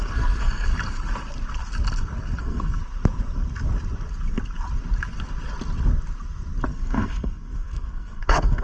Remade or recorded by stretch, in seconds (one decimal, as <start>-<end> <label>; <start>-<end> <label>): 0.0-0.7 remade; 0.7-2.4 recorded; 2.4-2.8 remade; 2.8-6.7 recorded; 6.7-8.6 remade